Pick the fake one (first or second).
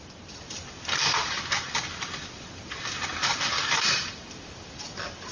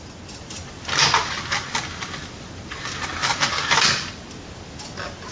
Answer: first